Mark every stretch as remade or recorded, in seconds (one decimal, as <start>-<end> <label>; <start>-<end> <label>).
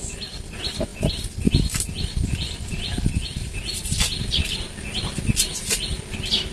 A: 0.0-6.5 recorded